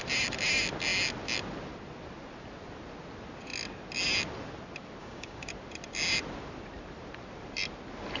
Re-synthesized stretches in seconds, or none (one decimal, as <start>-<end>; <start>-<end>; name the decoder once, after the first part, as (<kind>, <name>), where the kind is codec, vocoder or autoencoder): 5.0-5.5 (codec, DAC)